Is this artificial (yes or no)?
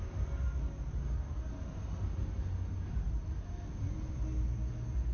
no